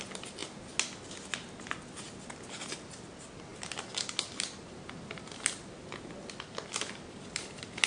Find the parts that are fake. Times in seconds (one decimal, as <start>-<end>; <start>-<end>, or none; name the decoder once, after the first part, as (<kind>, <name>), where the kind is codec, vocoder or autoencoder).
none

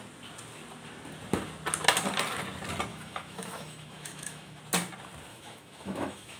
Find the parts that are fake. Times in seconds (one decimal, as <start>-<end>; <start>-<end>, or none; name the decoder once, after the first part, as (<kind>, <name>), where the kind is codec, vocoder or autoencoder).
2.9-4.6 (autoencoder, DAC-VAE); 5.3-6.4

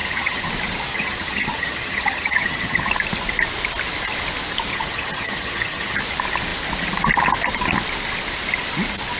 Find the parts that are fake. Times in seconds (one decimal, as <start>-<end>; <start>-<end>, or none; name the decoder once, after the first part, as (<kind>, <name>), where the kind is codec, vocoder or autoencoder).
0.0-0.5 (vocoder, HiFi-GAN); 0.9-2.9; 4.7-6.0

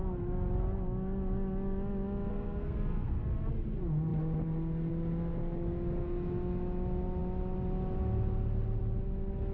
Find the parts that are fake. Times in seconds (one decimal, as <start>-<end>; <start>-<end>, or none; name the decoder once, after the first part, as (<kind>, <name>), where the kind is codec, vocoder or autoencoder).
2.3-3.2 (codec, SNAC)